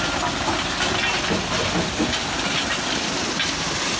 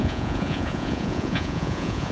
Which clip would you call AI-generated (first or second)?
second